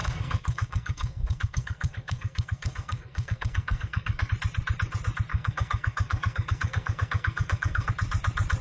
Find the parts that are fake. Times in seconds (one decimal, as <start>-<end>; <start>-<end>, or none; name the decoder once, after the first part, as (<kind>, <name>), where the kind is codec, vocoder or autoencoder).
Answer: 0.0-4.3 (codec, SNAC); 5.3-7.9